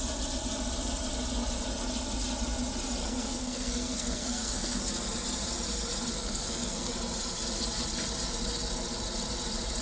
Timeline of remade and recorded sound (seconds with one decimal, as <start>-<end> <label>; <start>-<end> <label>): 0.0-3.0 recorded; 3.0-4.8 remade; 4.8-6.1 recorded; 6.1-6.9 remade; 6.9-9.8 recorded